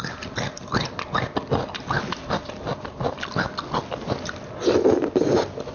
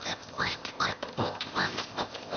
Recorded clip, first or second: first